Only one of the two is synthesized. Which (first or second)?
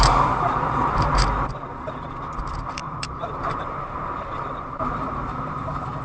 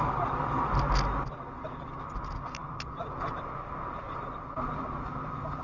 first